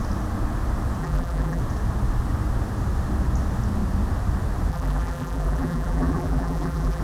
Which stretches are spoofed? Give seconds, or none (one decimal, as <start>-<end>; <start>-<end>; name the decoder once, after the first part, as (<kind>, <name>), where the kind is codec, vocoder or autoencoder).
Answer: 1.0-1.6 (vocoder, BigVGAN v2); 4.7-7.0